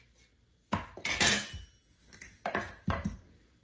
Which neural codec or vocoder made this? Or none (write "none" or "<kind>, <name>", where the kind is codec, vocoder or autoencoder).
none